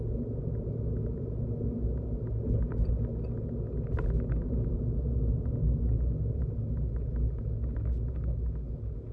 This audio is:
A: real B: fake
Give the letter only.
A